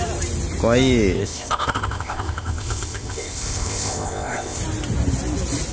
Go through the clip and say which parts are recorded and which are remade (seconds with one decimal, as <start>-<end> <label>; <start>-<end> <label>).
0.0-1.2 recorded; 1.2-4.6 remade; 4.6-5.7 recorded